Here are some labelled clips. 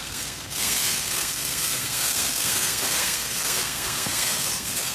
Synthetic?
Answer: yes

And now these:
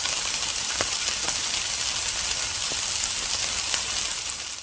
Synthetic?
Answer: no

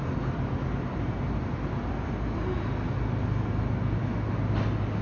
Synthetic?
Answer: no